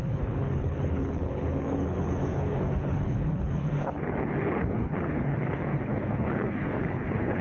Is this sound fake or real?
fake